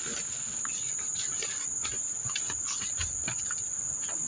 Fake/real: real